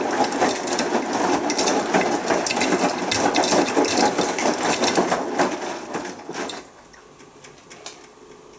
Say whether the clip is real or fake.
real